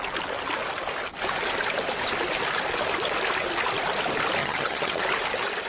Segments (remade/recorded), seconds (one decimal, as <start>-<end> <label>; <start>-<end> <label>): 0.0-4.4 recorded; 4.4-5.0 remade; 5.0-5.7 recorded